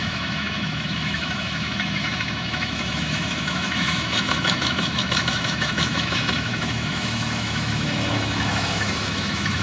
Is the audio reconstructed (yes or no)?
yes